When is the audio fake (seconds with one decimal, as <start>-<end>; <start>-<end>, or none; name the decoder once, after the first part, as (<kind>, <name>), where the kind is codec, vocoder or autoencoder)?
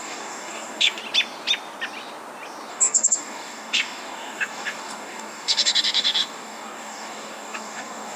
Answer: 0.0-1.0 (codec, DAC); 2.7-8.2